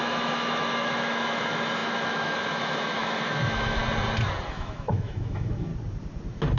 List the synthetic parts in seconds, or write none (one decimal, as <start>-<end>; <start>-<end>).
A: 0.0-3.8; 4.5-5.7